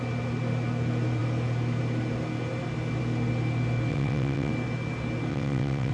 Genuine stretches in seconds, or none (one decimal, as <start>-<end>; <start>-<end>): 0.0-3.9; 4.5-5.3